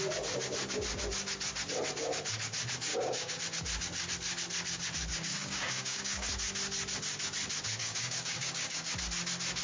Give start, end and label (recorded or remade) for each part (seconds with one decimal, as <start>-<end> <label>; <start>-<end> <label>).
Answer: 0.0-2.9 recorded; 2.9-3.4 remade; 3.4-5.1 recorded; 5.1-6.3 remade; 6.3-7.8 recorded; 7.8-8.9 remade; 8.9-9.6 recorded